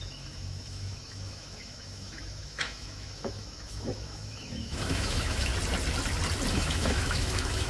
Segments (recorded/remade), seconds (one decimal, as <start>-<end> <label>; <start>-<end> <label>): 0.0-5.5 remade; 5.5-6.5 recorded; 6.5-7.7 remade